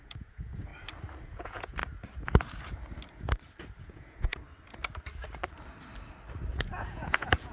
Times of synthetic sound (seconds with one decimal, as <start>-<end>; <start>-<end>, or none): 0.0-0.7; 1.2-1.8; 3.8-4.3; 6.5-7.5